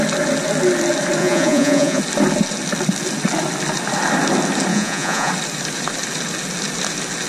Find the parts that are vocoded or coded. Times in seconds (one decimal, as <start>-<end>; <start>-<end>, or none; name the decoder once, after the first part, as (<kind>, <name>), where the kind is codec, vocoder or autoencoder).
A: 1.2-2.0 (vocoder, Vocos); 4.7-5.3